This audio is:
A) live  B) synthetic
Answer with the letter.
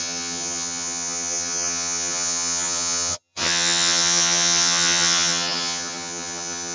B